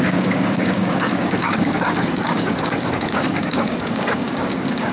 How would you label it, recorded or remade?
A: remade